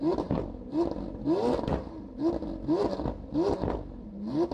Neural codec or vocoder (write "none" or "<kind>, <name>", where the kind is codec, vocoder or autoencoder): none